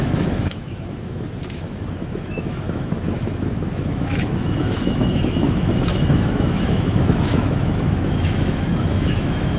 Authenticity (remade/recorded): remade